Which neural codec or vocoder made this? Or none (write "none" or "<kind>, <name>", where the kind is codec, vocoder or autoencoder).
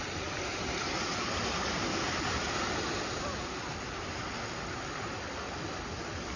none